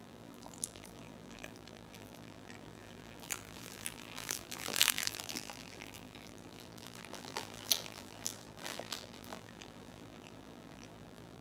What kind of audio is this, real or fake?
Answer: fake